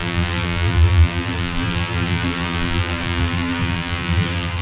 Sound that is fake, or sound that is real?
fake